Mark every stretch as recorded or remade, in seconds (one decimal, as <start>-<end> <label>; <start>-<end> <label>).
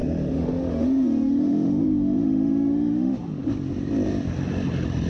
0.0-3.1 remade; 3.1-5.1 recorded